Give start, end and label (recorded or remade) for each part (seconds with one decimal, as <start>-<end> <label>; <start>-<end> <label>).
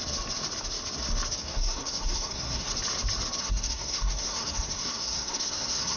0.0-1.4 recorded; 1.4-2.7 remade; 2.7-3.4 recorded; 3.4-6.0 remade